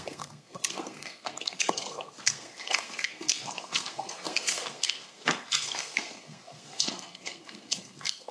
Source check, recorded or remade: remade